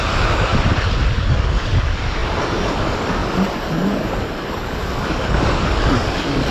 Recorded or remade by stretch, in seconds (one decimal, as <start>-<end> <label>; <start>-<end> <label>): 0.0-0.5 remade; 0.5-1.1 recorded; 1.1-6.5 remade